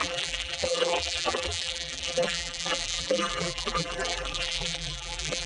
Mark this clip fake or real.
fake